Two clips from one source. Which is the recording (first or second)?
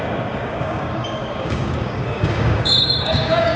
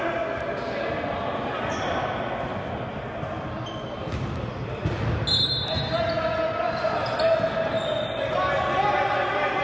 second